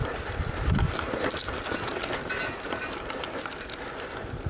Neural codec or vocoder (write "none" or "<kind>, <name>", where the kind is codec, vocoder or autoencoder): none